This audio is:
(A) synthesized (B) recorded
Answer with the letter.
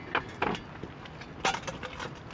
B